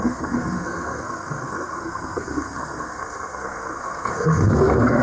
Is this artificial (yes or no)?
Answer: yes